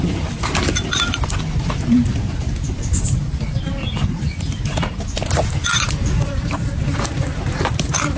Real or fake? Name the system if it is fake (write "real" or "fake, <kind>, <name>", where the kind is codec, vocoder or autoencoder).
real